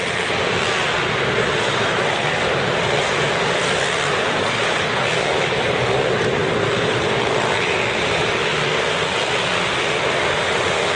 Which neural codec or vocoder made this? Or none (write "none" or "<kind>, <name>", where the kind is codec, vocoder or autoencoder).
vocoder, BigVGAN v2